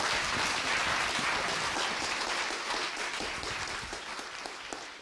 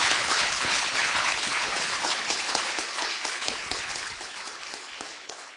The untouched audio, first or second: first